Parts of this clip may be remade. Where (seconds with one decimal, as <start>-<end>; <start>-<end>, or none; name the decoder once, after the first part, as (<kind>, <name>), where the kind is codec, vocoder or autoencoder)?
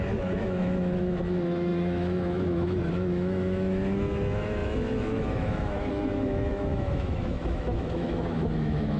0.0-9.0 (autoencoder, DAC-VAE)